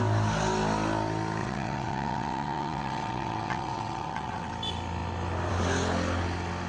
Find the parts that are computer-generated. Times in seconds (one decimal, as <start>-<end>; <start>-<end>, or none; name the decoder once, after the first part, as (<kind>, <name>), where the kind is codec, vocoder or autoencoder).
1.4-4.5 (vocoder, WaveNeXt)